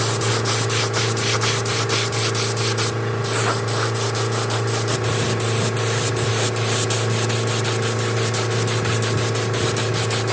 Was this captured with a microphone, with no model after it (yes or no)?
yes